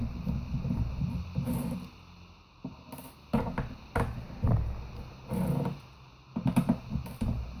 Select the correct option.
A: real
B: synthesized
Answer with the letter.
A